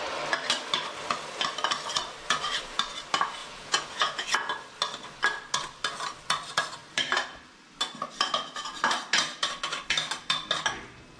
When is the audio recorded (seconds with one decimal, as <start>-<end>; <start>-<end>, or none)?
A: 0.0-3.4; 4.5-11.2